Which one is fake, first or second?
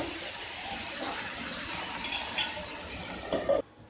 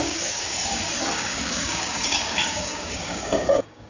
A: second